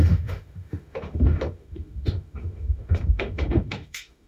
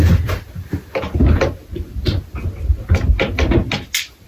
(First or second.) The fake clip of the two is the first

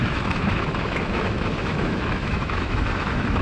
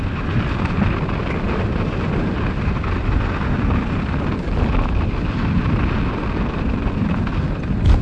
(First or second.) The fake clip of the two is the first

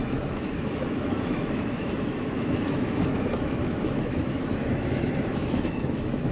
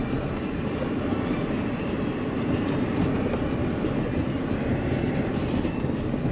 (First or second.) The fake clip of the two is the first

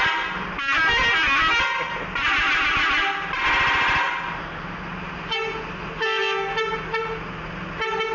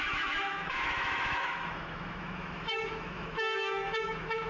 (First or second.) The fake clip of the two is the second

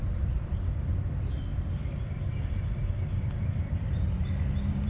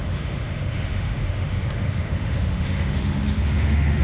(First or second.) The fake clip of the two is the second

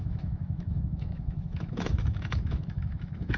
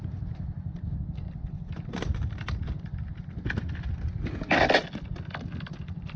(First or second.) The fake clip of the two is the first